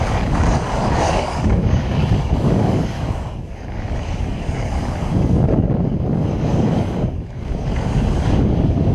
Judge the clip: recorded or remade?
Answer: remade